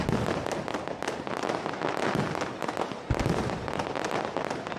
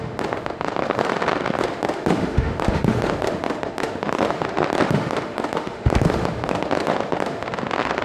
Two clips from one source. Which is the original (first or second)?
first